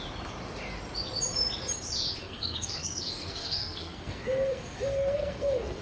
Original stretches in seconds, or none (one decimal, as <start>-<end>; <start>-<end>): 0.0-2.2